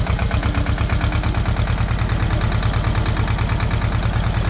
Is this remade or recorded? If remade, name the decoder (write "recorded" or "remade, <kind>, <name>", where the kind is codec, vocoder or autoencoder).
recorded